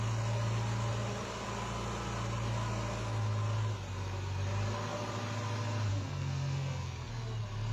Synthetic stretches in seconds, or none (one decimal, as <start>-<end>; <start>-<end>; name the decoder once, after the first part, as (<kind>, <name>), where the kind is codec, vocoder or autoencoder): 5.9-7.1 (codec, SNAC)